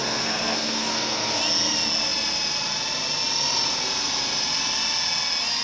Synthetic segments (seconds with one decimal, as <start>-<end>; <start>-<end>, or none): 0.0-1.4